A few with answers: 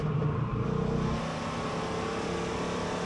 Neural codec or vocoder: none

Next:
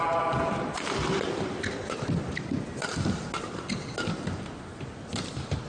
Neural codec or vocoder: none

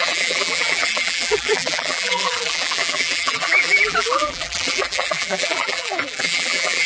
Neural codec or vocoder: vocoder, BigVGAN v2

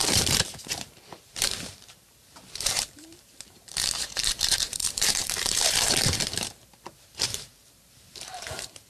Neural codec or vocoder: vocoder, BigVGAN v2